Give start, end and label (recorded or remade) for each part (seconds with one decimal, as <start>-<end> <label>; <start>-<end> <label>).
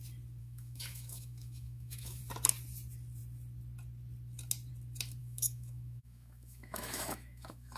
0.0-0.4 recorded; 0.4-2.2 remade; 2.2-5.2 recorded; 5.2-7.8 remade